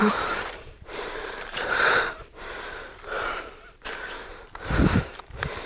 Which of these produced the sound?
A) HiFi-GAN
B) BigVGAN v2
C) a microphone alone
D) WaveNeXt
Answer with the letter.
B